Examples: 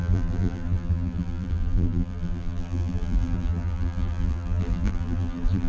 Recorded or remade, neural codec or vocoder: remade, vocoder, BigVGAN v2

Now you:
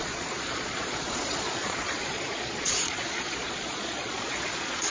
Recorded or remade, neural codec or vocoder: remade, vocoder, Vocos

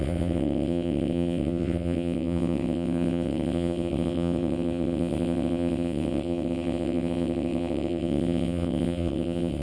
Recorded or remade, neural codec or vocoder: remade, vocoder, WaveNeXt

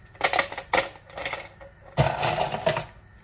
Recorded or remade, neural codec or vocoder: recorded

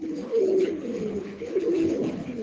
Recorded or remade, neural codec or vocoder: remade, codec, HILCodec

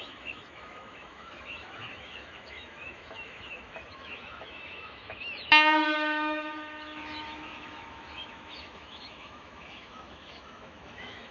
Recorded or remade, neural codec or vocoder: remade, autoencoder, DAC-VAE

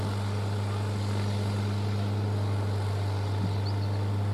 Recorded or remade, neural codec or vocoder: recorded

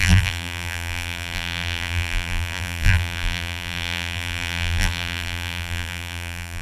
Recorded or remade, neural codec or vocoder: remade, vocoder, BigVGAN v2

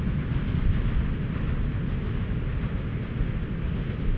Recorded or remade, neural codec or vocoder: recorded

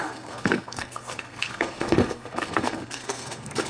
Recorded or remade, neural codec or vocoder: remade, codec, SNAC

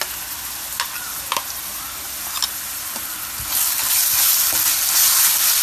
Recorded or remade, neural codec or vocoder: recorded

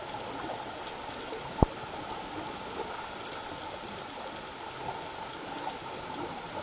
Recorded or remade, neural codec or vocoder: recorded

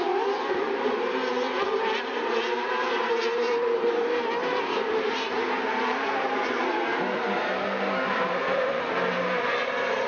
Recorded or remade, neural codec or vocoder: remade, vocoder, BigVGAN v2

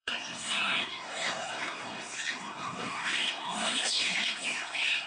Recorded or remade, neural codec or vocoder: remade, codec, SNAC